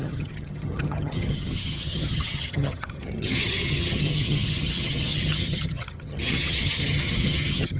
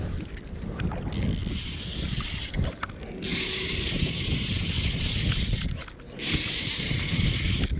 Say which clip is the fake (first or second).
first